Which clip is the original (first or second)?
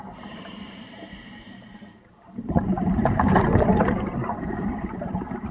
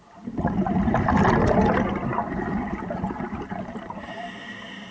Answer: second